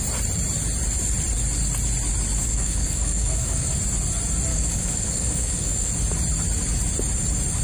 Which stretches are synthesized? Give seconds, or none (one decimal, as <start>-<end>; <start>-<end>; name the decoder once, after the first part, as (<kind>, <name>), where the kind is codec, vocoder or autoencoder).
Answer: 2.4-3.8 (codec, DAC); 4.5-5.9